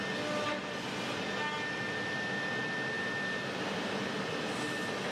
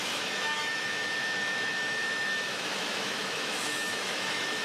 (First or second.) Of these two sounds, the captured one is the first